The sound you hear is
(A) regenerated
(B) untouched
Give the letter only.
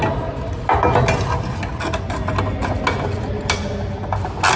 B